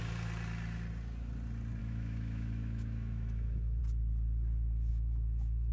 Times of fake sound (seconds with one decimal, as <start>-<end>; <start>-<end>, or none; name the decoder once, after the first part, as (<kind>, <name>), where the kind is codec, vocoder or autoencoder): 1.8-3.8 (autoencoder, DAC-VAE); 4.9-5.7